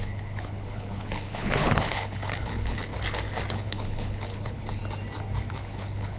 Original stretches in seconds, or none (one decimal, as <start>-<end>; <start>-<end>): 2.9-3.5; 4.8-5.5